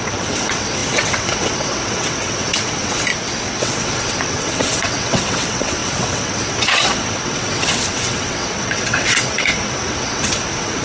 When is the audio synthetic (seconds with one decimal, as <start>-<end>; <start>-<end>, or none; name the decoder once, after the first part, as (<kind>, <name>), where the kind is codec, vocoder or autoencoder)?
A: 0.0-3.1 (vocoder, WaveNeXt); 3.6-10.8